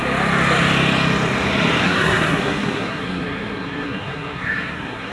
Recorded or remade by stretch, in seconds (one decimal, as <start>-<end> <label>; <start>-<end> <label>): 0.0-1.8 recorded; 1.8-5.1 remade